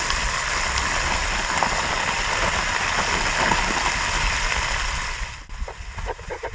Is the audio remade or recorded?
recorded